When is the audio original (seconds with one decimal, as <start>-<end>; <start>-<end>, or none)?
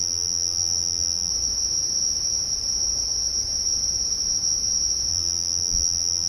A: 1.3-5.1